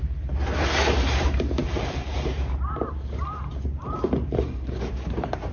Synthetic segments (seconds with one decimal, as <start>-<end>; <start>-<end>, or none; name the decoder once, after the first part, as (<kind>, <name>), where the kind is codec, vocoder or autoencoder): 1.2-5.5 (vocoder, BigVGAN v2)